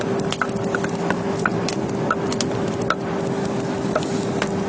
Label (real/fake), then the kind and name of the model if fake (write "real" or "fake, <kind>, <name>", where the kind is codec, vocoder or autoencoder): real